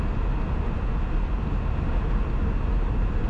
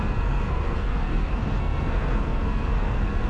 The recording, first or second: first